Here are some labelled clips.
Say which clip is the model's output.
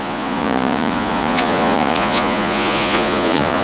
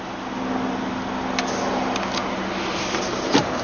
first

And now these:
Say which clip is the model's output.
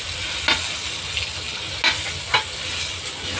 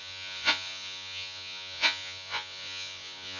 second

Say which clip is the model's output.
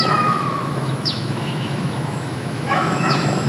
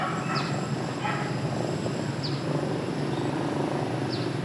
first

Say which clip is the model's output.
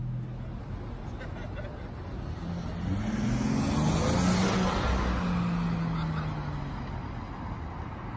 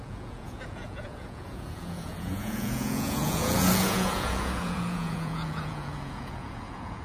second